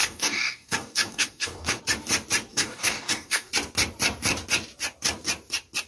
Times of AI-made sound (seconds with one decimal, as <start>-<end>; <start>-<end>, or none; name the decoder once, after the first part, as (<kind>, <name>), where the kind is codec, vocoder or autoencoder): 0.0-1.8 (codec, DAC); 2.5-3.5